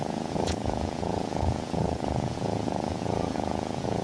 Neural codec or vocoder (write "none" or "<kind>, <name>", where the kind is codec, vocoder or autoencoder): vocoder, Vocos